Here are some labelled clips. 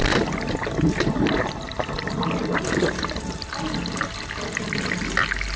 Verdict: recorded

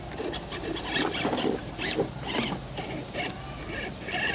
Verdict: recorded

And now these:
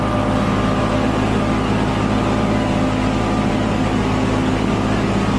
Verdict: recorded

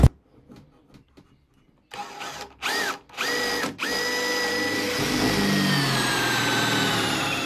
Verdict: recorded